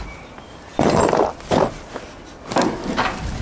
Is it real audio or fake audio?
real